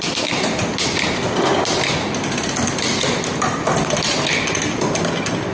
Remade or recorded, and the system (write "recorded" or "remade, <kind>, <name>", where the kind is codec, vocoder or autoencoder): recorded